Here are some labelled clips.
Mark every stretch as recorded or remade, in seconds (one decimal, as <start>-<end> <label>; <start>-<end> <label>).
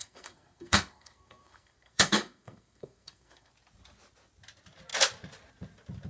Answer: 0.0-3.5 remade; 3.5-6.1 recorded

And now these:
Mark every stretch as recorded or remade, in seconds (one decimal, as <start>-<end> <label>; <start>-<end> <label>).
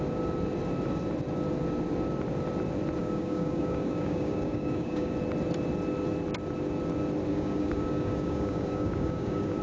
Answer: 0.0-3.0 recorded; 3.0-5.1 remade; 5.1-7.3 recorded; 7.3-9.6 remade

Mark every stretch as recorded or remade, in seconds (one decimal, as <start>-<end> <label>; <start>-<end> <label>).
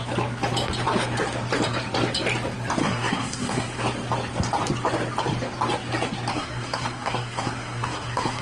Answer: 0.0-2.8 recorded; 2.8-3.8 remade; 3.8-6.3 recorded; 6.3-8.4 remade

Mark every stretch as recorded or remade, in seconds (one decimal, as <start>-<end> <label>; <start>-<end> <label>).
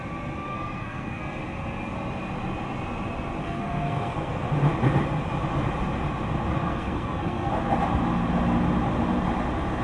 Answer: 0.0-0.5 recorded; 0.5-1.2 remade; 1.2-3.4 recorded; 3.4-4.3 remade; 4.3-6.6 recorded; 6.6-7.5 remade; 7.5-9.8 recorded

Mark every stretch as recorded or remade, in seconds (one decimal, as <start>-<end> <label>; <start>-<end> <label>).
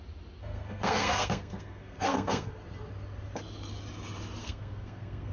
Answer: 0.0-0.4 recorded; 0.4-2.5 remade; 2.5-4.4 recorded; 4.4-5.3 remade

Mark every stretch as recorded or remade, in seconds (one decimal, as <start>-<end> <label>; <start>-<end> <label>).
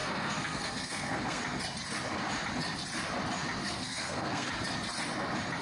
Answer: 0.0-1.4 remade; 1.4-3.6 recorded; 3.6-4.5 remade; 4.5-5.6 recorded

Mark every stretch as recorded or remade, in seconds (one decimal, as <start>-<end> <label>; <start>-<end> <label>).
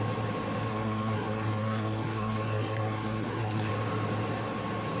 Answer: 0.0-0.7 recorded; 0.7-3.7 remade; 3.7-5.0 recorded